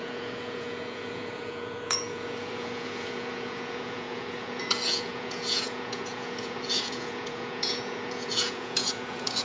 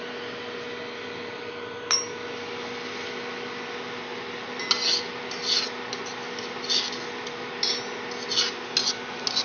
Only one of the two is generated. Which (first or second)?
first